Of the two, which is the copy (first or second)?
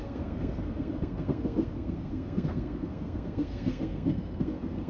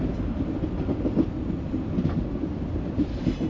first